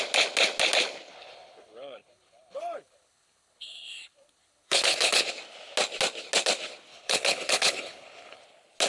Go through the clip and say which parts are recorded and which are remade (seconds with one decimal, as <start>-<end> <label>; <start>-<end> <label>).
0.0-1.1 recorded; 1.1-5.3 remade; 5.3-6.9 recorded; 6.9-8.4 remade; 8.4-8.9 recorded